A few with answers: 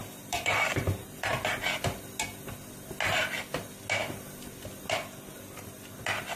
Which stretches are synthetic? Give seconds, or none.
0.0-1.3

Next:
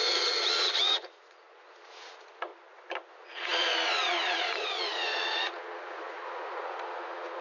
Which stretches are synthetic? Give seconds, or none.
0.0-2.5; 3.1-7.4

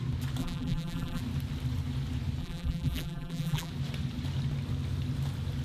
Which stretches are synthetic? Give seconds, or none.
0.4-1.2; 2.4-3.7

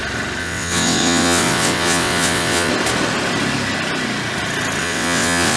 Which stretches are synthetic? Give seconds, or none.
0.4-2.7; 4.8-5.6

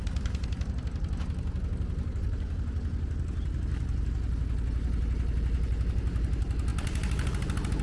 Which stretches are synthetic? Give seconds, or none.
none